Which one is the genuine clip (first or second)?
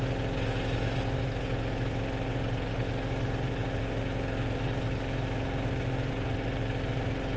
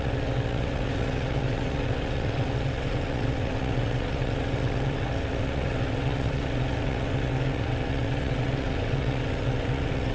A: first